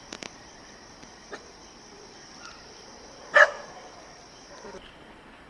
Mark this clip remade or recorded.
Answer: remade